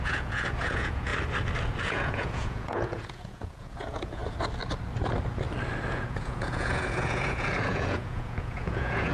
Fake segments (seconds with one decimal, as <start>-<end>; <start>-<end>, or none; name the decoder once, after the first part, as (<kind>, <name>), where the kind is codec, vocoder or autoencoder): 0.0-1.1 (vocoder, Vocos); 1.8-4.2; 5.9-9.1